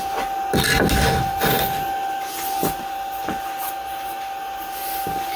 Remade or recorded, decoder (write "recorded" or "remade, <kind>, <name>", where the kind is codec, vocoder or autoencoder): recorded